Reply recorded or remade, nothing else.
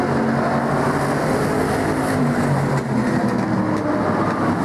recorded